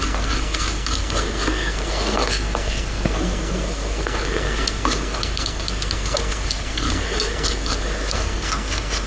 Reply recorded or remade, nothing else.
remade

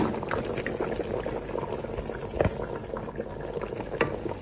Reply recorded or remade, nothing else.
recorded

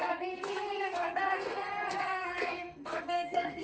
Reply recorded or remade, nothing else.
remade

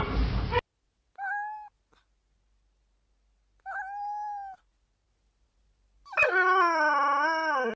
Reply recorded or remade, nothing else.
recorded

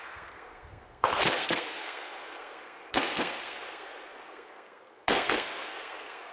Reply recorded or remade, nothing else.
remade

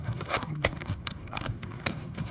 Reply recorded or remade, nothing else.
remade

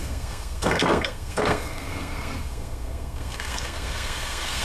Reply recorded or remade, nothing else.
remade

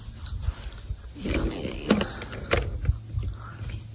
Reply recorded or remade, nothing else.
recorded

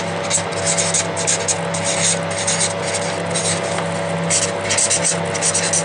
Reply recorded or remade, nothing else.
recorded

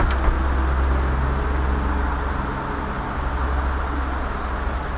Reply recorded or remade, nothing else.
recorded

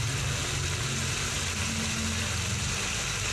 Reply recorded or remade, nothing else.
recorded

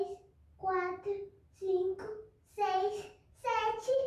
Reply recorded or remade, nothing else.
recorded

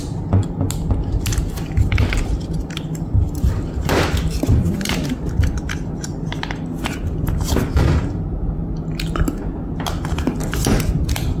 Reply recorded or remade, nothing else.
recorded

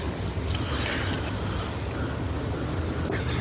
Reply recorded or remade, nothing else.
recorded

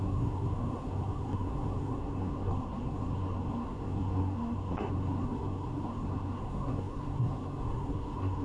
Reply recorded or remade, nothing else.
remade